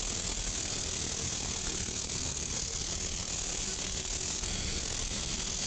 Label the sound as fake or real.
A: fake